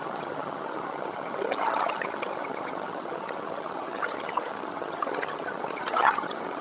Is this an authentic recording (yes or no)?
no